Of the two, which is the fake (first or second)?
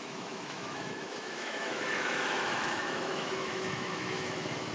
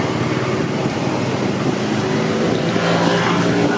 first